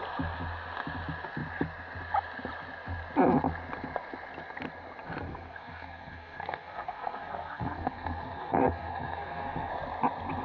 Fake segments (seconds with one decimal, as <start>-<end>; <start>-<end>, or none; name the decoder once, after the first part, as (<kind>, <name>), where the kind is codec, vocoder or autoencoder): 5.3-9.7 (codec, SNAC)